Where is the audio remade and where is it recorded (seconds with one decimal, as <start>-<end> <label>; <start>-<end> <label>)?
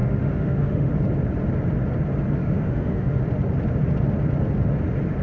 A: 0.0-0.9 remade; 0.9-2.4 recorded; 2.4-3.2 remade; 3.2-5.2 recorded